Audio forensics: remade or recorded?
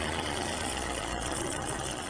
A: remade